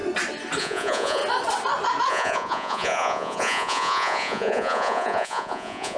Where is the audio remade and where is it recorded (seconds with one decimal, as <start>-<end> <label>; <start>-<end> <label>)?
0.0-0.6 recorded; 0.6-1.2 remade; 1.2-2.1 recorded; 2.1-6.0 remade